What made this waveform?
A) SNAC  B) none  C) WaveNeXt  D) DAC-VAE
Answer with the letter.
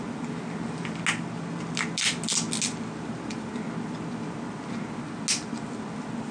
B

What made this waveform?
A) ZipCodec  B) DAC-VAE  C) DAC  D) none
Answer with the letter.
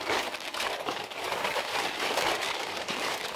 C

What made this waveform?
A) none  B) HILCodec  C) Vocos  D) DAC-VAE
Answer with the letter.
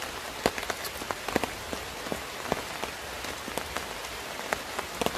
A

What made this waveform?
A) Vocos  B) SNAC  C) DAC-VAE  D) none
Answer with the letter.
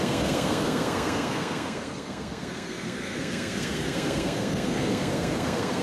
B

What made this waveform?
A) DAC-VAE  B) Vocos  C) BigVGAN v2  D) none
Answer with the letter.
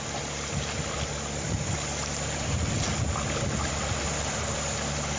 D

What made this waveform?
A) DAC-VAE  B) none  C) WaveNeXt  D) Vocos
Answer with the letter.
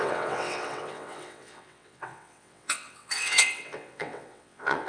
C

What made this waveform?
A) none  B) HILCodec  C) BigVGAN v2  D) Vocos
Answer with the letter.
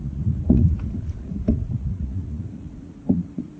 D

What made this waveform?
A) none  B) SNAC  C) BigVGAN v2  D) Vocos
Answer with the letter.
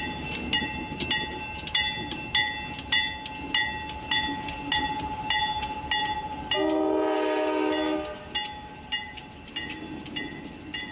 A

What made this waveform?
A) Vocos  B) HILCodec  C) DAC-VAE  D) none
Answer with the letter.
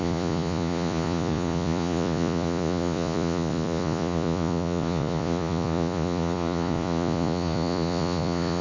A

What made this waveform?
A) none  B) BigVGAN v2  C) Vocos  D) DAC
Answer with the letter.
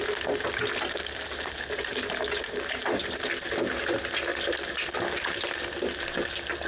A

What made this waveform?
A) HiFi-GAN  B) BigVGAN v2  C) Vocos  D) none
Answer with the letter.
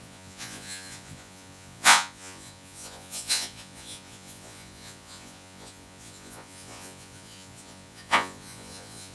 C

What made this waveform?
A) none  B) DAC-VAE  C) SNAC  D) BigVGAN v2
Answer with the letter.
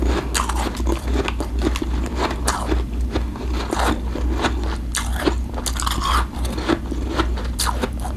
A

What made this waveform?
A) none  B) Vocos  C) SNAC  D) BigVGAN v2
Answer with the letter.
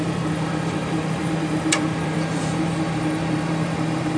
D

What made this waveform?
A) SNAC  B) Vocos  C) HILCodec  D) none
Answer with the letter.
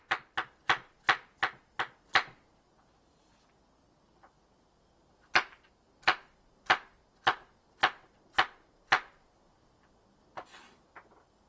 D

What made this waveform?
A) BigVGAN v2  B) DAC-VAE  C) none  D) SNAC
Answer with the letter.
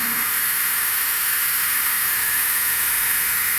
B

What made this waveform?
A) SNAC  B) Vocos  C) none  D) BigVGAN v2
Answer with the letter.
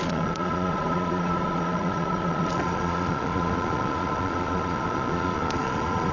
B